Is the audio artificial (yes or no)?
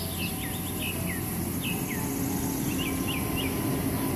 no